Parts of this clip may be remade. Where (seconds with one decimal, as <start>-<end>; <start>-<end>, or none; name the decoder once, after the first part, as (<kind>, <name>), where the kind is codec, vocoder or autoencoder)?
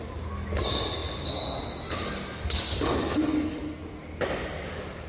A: 2.3-3.7 (codec, DAC); 4.4-5.1